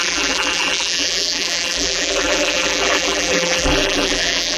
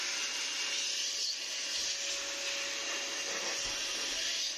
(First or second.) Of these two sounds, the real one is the second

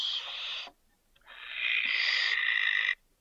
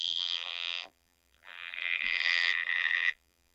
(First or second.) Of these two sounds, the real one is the first